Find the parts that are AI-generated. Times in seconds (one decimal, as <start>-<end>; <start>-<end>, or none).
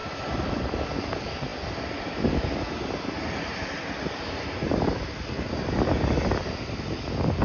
none